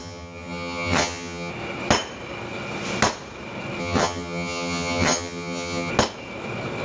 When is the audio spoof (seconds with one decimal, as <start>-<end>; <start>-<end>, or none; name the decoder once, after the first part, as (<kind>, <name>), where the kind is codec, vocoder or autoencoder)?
0.0-1.5 (vocoder, HiFi-GAN); 3.8-5.9